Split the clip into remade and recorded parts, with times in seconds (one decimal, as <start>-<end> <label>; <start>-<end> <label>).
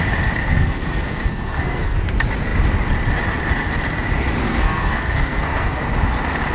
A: 0.0-0.4 recorded; 0.4-2.0 remade; 2.0-4.4 recorded; 4.4-5.8 remade; 5.8-6.5 recorded